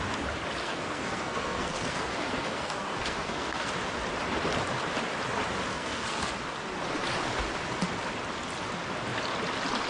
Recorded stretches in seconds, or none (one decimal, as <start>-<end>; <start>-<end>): 0.0-0.6; 3.7-5.7; 6.3-9.9